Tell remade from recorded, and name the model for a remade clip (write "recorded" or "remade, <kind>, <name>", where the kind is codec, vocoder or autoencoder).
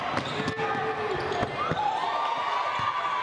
recorded